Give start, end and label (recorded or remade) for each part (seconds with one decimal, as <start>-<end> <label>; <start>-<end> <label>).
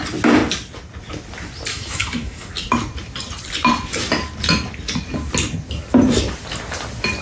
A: 0.0-1.7 recorded; 1.7-2.5 remade; 2.5-7.2 recorded